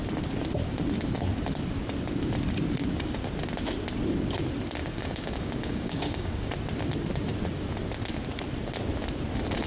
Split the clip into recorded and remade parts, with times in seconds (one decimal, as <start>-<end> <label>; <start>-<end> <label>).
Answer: 0.0-4.8 recorded; 4.8-6.5 remade; 6.5-9.7 recorded